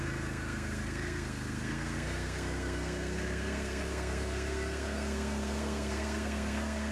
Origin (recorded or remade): remade